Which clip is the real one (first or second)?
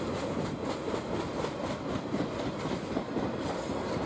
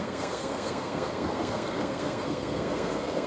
first